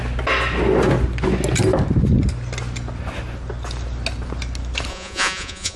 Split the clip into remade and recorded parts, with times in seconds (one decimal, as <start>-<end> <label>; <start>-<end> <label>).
0.0-4.9 recorded; 4.9-5.8 remade